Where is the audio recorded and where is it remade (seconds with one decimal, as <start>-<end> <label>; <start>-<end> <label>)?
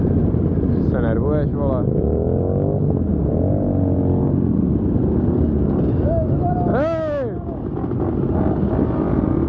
0.0-9.5 recorded